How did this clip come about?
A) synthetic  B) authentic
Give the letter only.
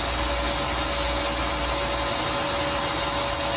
B